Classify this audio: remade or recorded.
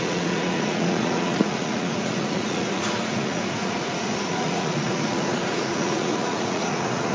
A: remade